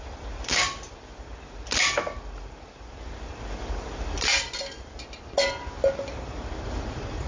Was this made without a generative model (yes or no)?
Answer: yes